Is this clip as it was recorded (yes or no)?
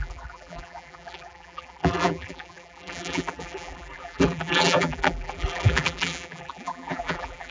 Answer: no